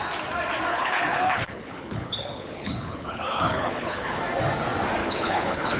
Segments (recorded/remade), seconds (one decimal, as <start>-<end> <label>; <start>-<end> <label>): 0.0-0.7 recorded; 0.7-4.2 remade; 4.2-5.0 recorded; 5.0-5.8 remade